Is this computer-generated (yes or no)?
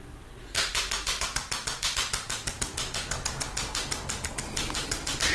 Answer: no